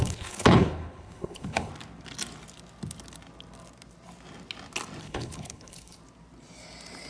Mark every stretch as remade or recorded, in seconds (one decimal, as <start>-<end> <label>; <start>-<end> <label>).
0.0-1.7 remade; 1.7-5.0 recorded; 5.0-6.0 remade; 6.0-7.1 recorded